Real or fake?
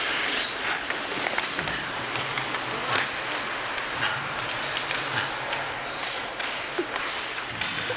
real